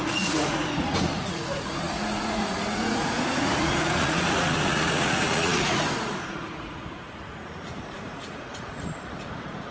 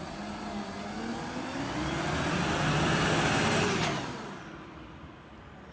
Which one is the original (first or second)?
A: second